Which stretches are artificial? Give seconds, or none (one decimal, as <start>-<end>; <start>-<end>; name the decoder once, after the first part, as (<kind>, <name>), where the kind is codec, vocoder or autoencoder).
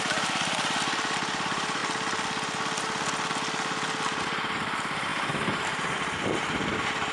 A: 0.0-1.8 (vocoder, BigVGAN v2); 4.2-7.1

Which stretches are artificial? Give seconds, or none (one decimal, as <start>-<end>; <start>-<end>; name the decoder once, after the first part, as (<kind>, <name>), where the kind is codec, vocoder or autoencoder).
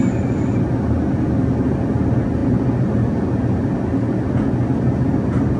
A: none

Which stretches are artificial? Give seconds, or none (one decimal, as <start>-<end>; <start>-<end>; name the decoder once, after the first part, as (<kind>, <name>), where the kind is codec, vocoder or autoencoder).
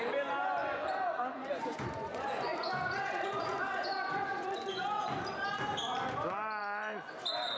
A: 0.6-5.0 (vocoder, Vocos); 6.6-7.1